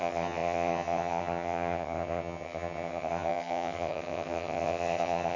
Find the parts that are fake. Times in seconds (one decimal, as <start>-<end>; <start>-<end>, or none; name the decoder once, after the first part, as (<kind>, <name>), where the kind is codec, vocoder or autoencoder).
0.0-5.4 (vocoder, HiFi-GAN)